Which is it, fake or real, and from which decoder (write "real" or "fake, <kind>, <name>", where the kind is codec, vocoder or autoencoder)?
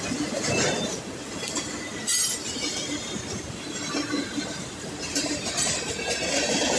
real